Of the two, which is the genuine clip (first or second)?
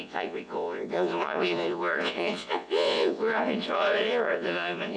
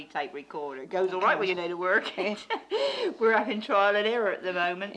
second